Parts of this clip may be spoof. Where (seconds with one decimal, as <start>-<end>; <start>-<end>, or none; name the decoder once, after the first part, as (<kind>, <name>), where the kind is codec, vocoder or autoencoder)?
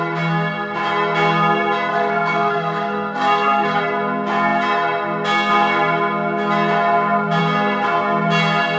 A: 1.9-3.8 (codec, SNAC)